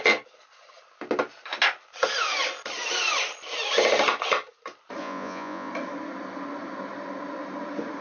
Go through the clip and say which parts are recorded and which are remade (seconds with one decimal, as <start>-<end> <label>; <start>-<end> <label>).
0.0-5.0 recorded; 5.0-5.7 remade; 5.7-8.0 recorded